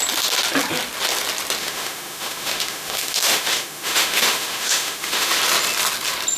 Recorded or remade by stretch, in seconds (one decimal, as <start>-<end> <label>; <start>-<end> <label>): 0.0-1.6 recorded; 1.6-5.4 remade; 5.4-6.4 recorded